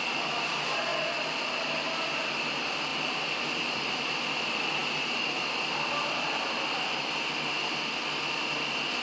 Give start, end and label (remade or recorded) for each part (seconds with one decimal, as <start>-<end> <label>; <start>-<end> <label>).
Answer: 0.0-0.9 recorded; 0.9-1.7 remade; 1.7-2.9 recorded; 2.9-4.3 remade; 4.3-9.0 recorded